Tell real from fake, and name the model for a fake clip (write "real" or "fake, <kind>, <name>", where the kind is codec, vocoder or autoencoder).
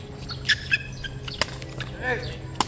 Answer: real